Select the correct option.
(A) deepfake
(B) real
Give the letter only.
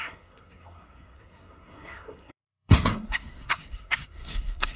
A